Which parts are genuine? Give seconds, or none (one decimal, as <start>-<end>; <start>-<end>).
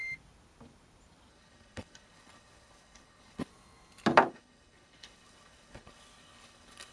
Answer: 0.0-1.3; 3.5-4.3